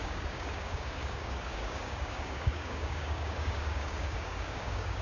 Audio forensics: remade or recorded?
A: remade